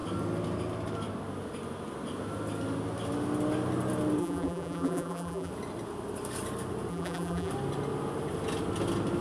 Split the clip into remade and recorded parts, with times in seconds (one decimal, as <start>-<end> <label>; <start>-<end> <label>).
0.0-4.2 recorded; 4.2-5.5 remade; 5.5-6.9 recorded; 6.9-7.5 remade; 7.5-9.2 recorded